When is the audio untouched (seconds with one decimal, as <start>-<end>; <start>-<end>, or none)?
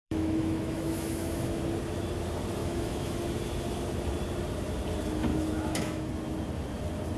1.6-2.6; 3.2-5.3; 6.1-7.2